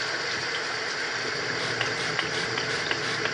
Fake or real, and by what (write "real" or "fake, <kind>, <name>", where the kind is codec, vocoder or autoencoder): fake, vocoder, BigVGAN v2